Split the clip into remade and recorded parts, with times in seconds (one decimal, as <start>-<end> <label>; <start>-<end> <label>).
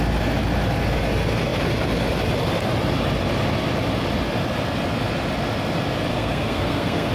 0.0-6.1 recorded; 6.1-7.1 remade